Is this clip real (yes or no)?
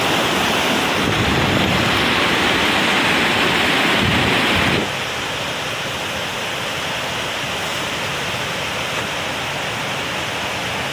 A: yes